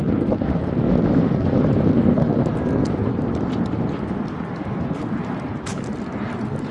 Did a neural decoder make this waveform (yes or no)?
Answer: no